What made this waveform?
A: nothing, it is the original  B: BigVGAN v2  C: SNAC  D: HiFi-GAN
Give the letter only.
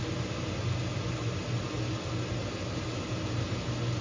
A